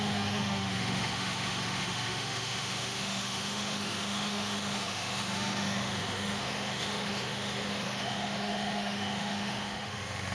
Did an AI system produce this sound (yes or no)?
yes